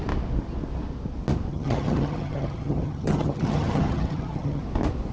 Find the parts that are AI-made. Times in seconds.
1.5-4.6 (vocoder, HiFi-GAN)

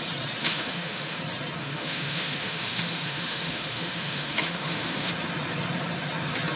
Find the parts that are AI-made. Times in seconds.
0.4-1.2 (autoencoder, DAC-VAE); 1.6-5.1